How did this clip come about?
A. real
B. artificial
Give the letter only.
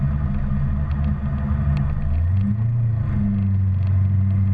A